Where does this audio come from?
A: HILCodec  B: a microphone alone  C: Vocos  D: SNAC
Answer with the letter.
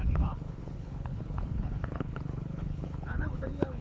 A